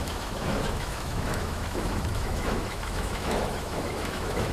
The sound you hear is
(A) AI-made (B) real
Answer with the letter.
A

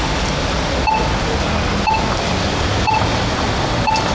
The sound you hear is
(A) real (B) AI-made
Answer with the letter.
A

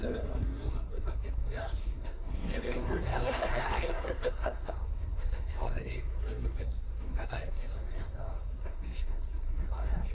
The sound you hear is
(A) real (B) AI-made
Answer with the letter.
B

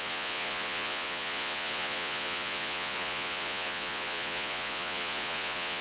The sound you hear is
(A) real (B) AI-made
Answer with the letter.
B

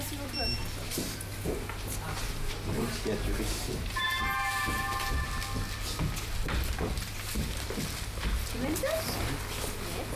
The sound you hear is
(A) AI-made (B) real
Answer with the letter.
B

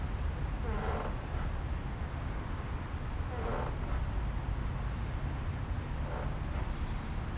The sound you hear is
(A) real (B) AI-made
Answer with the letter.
A